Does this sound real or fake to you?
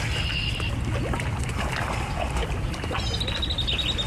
real